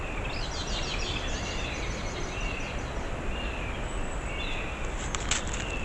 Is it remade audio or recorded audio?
recorded